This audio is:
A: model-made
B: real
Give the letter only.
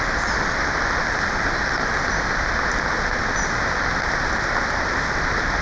B